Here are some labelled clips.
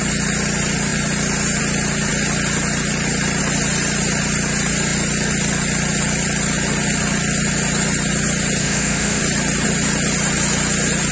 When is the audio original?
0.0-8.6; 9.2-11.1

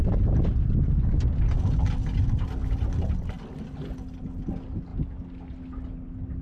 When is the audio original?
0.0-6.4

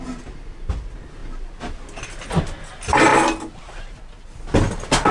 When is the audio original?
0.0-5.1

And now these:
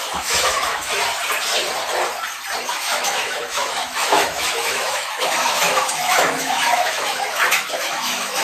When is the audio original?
1.0-2.7